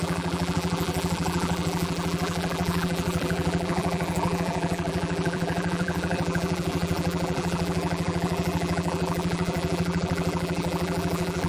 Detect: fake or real fake